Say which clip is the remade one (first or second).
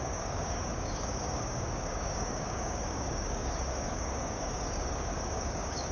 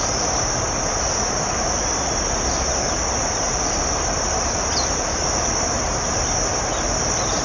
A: first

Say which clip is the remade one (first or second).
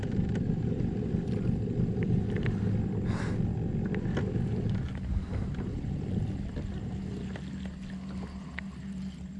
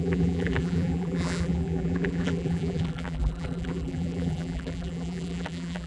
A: second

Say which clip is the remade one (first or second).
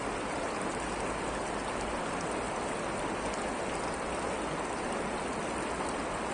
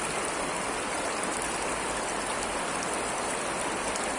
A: second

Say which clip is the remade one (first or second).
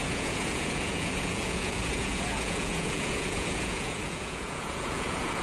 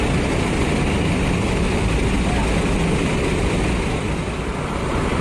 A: first